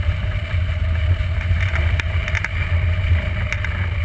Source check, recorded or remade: recorded